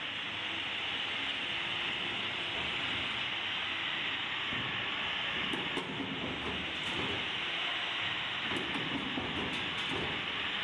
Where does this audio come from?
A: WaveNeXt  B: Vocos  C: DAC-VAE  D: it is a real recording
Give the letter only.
D